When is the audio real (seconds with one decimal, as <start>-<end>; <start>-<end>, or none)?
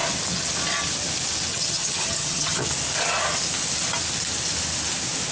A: 0.0-1.5; 2.6-5.3